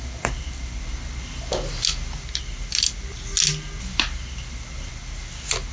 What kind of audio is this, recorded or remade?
recorded